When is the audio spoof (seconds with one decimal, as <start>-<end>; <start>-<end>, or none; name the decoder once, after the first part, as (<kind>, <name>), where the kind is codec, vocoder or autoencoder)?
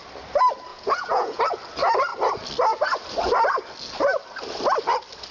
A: 0.7-1.4 (vocoder, Vocos)